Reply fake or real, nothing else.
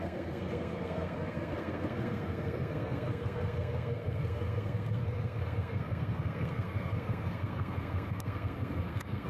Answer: fake